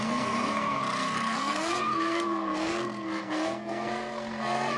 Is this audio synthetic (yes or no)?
yes